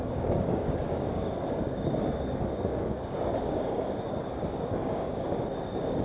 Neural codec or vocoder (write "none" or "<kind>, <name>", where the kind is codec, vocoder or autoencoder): codec, DAC